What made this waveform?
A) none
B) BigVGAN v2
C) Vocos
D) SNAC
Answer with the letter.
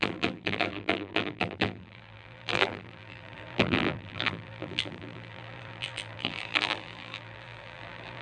B